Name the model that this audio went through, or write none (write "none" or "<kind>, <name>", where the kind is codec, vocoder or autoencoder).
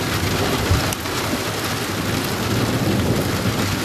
none